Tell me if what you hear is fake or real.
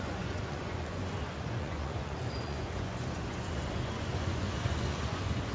fake